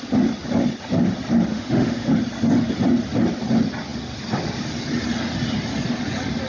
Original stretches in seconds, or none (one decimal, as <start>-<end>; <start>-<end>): 0.0-1.5; 2.1-6.5